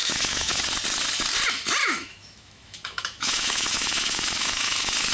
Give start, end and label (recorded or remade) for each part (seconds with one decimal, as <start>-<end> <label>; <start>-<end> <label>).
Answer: 0.0-0.6 remade; 0.6-1.8 recorded; 1.8-5.1 remade